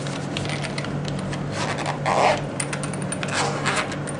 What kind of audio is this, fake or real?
real